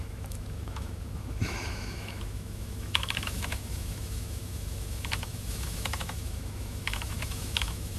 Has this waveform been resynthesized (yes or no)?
yes